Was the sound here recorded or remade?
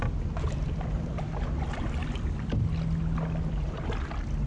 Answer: recorded